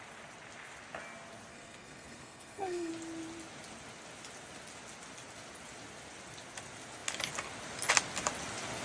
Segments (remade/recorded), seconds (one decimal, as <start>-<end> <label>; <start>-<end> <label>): 0.0-1.5 recorded; 1.5-2.9 remade; 2.9-8.8 recorded